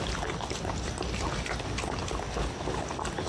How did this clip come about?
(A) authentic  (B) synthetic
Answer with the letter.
A